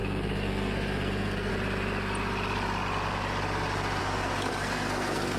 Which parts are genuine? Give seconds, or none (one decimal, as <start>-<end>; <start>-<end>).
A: 1.5-4.0

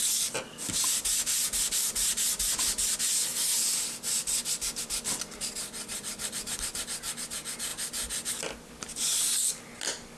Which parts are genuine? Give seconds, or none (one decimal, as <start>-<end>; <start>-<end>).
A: 0.0-3.3; 4.4-10.2

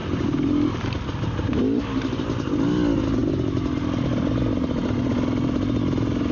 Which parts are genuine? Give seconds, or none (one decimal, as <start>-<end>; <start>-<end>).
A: 0.0-6.3

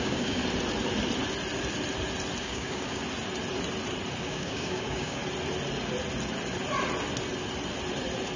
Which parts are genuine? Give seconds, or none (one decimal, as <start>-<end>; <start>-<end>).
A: 0.4-2.4; 3.0-4.2; 5.2-8.4